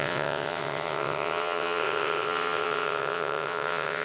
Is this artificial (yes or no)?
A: yes